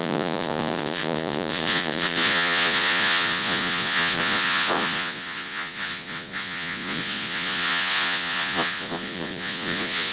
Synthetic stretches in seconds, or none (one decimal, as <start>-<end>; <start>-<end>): 0.0-10.1